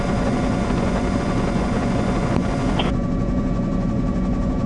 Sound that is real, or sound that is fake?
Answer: fake